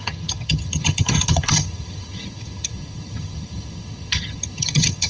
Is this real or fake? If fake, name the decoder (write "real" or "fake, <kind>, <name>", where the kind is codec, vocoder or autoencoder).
fake, vocoder, HiFi-GAN